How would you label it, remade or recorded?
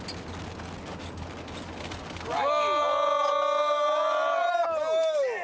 recorded